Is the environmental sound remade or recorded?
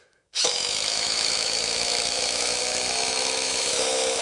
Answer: remade